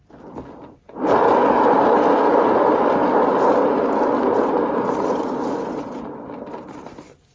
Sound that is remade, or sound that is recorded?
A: recorded